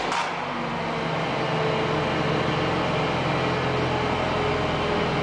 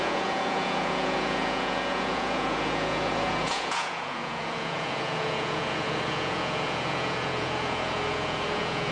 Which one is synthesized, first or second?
second